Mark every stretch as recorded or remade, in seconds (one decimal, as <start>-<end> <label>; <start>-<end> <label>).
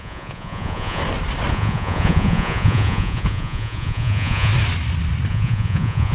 0.0-1.0 remade; 1.0-1.5 recorded; 1.5-4.5 remade; 4.5-5.3 recorded; 5.3-6.1 remade